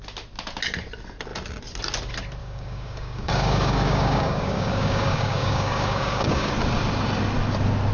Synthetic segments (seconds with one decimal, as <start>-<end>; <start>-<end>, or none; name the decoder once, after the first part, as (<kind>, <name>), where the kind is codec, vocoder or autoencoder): 2.4-6.5 (codec, DAC)